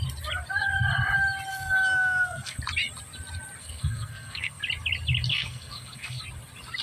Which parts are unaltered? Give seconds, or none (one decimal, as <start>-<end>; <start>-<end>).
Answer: 0.0-1.5; 2.6-3.6; 4.6-5.3; 6.2-6.8